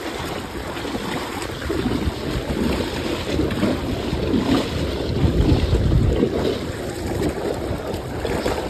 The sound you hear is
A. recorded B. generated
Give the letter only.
A